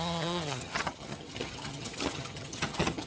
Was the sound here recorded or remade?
remade